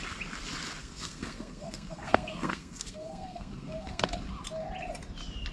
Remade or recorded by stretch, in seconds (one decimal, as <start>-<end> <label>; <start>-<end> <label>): 0.0-0.8 recorded; 0.8-4.1 remade; 4.1-5.5 recorded